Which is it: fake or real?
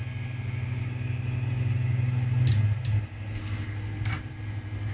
real